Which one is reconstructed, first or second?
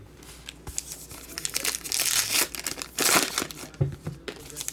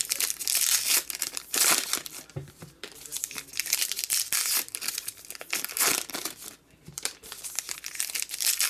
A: second